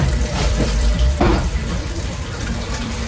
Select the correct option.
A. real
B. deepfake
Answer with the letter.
B